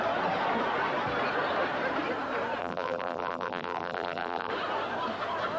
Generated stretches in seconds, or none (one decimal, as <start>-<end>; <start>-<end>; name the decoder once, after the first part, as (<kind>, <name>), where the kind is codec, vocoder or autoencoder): 2.6-4.5 (vocoder, BigVGAN v2)